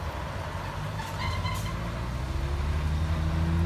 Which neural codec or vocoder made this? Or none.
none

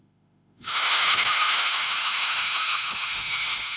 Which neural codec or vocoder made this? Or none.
autoencoder, DAC-VAE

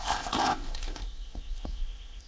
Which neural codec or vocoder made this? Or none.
codec, ZipCodec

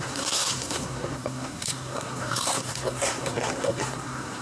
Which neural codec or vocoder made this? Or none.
codec, SNAC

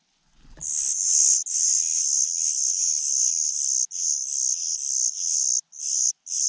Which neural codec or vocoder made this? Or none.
none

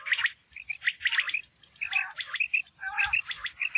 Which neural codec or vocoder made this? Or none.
vocoder, BigVGAN v2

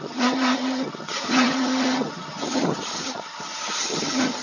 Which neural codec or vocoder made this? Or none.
vocoder, HiFi-GAN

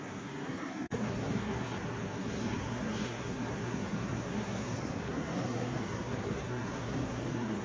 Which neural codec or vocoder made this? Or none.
codec, SNAC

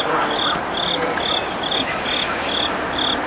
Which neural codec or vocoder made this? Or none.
none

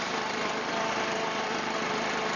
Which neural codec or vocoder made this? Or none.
vocoder, BigVGAN v2